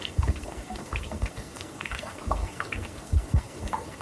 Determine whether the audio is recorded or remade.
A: remade